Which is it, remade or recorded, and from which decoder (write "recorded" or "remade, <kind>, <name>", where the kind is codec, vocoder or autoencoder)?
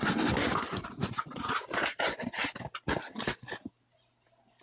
recorded